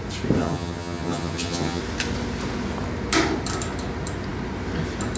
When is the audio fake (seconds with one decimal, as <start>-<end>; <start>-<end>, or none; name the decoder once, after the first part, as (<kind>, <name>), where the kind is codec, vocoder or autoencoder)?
0.4-1.8 (vocoder, HiFi-GAN)